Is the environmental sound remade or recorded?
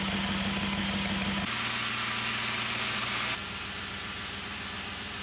recorded